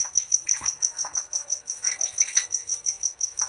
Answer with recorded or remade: remade